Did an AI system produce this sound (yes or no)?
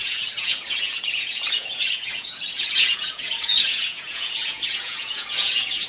yes